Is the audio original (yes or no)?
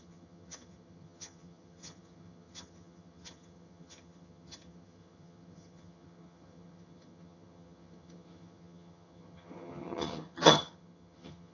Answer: no